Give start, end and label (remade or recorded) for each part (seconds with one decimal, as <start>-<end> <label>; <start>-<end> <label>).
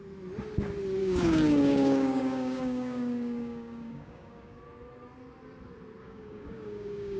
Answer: 0.0-1.0 recorded; 1.0-4.6 remade; 4.6-6.0 recorded; 6.0-7.2 remade